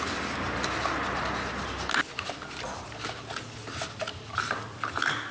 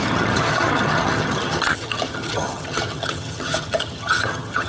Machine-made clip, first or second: second